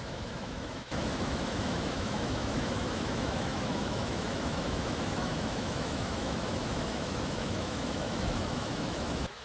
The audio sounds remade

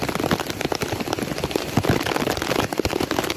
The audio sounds recorded